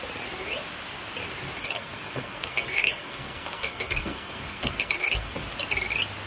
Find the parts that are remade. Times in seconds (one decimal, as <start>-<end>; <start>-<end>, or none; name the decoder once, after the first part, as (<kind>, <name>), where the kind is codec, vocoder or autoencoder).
1.6-5.4 (codec, SNAC)